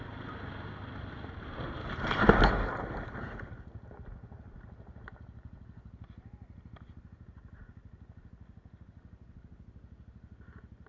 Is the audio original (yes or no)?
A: yes